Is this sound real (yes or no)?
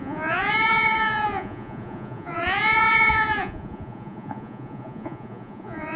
no